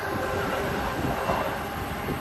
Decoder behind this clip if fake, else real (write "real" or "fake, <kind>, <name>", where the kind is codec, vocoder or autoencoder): real